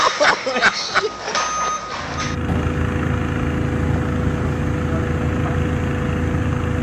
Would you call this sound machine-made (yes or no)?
no